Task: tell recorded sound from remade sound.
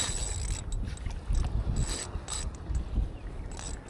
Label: recorded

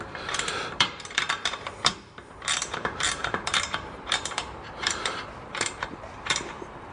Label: remade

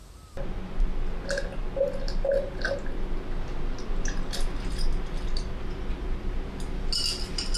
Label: recorded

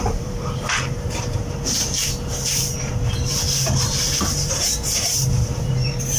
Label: remade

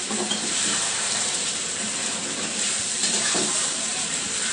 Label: remade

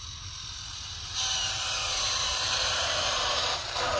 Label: remade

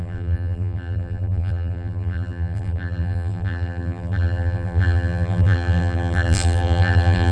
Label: remade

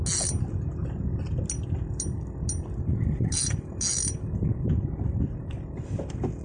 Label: recorded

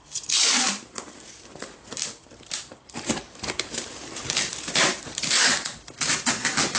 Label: remade